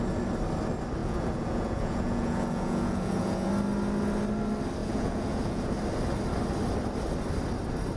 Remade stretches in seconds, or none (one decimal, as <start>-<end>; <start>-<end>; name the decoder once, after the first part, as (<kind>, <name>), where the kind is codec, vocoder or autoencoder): 1.0-3.5 (vocoder, Vocos); 4.8-5.6